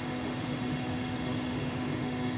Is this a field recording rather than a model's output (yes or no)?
no